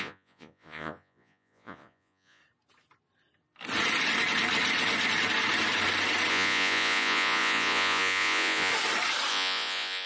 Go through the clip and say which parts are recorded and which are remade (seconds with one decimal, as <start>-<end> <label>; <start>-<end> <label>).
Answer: 0.0-2.4 remade; 2.4-6.3 recorded; 6.3-8.7 remade; 8.7-9.3 recorded; 9.3-10.1 remade